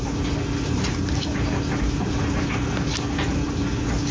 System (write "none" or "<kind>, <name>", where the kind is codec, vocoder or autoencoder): none